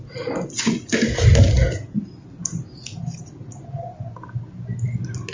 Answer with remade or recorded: recorded